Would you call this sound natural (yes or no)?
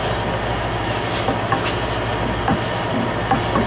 yes